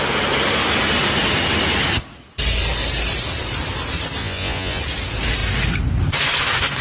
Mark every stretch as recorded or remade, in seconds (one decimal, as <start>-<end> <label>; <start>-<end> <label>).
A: 0.0-4.2 recorded; 4.2-4.8 remade; 4.8-6.8 recorded